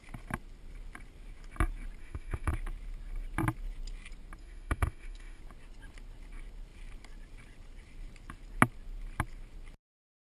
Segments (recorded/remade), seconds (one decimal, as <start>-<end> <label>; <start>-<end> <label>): 0.0-2.0 recorded; 2.0-2.5 remade; 2.5-4.4 recorded; 4.4-5.4 remade; 5.4-10.2 recorded